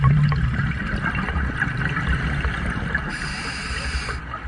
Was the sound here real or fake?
real